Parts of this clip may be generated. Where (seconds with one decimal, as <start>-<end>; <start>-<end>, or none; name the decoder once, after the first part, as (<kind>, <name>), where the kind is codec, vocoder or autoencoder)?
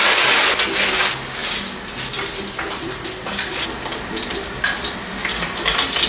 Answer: none